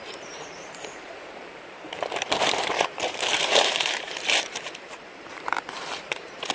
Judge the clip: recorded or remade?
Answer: remade